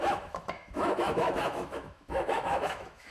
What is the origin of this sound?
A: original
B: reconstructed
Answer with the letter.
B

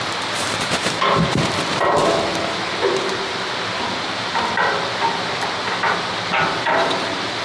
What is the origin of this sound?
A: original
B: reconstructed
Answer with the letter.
A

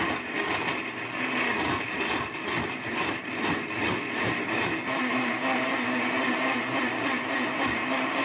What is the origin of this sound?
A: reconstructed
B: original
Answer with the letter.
B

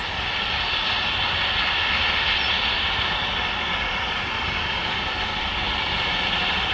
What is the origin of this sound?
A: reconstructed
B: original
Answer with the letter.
B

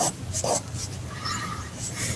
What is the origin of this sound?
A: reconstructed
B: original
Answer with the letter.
A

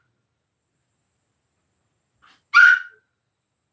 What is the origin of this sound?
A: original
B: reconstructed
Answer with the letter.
A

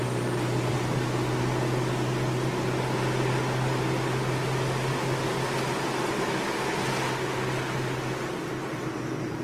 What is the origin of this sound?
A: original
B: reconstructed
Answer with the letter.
A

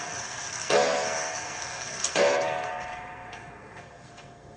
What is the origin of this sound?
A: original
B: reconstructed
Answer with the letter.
B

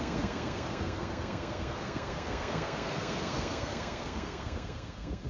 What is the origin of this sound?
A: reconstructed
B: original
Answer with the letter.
A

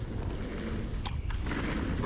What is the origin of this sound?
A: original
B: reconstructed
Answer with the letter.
A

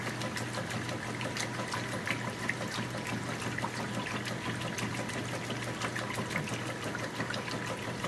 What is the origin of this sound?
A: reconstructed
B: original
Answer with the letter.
B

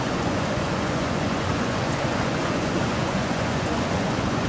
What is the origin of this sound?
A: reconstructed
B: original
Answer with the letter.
A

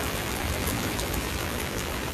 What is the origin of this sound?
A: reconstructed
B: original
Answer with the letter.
A